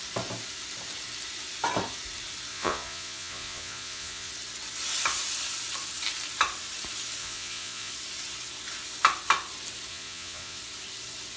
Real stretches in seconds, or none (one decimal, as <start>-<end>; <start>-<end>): 0.0-2.5; 4.3-7.2; 7.9-9.9; 10.6-11.4